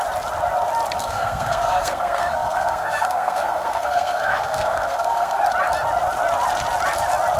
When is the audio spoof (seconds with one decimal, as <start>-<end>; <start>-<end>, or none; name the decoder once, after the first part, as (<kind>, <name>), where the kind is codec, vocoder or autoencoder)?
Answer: 1.0-5.4 (codec, SNAC)